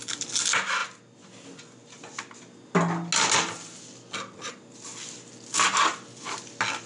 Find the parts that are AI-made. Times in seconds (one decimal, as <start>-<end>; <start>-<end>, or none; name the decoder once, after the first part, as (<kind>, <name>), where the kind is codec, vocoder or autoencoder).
none